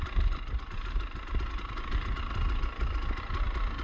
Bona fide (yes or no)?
yes